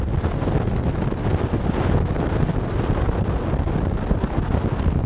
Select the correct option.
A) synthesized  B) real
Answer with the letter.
B